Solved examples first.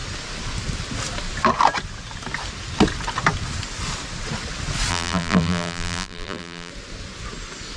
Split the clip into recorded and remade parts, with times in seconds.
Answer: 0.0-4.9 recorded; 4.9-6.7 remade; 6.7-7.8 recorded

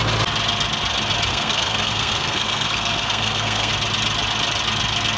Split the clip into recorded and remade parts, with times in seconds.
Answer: 0.0-1.3 recorded; 1.3-3.7 remade; 3.7-5.2 recorded